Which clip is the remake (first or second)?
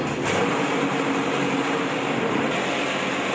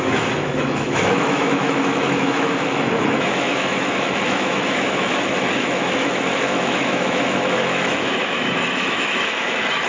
second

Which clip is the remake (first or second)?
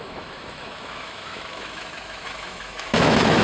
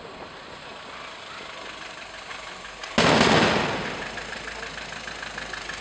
first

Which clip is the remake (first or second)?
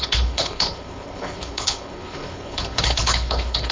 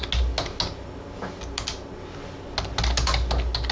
first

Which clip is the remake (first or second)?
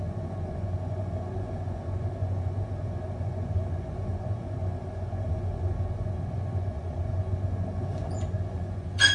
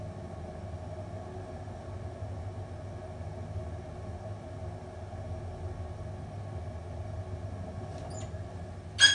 first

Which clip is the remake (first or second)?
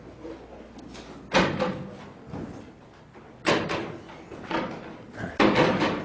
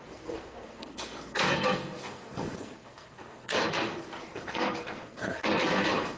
second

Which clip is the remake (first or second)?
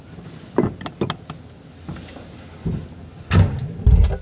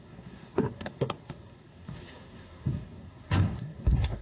second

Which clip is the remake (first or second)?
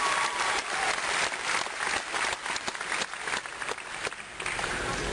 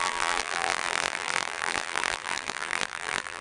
second